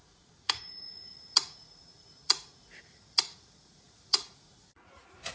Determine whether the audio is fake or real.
fake